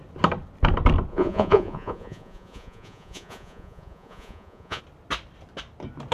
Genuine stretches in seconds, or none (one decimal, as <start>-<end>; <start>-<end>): 0.0-1.1; 4.8-6.1